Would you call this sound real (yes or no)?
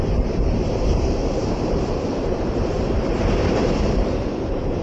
no